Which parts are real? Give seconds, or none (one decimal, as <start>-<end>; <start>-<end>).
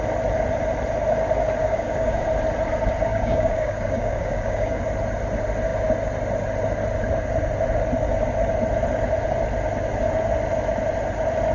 0.0-1.6; 2.3-3.1; 4.8-11.5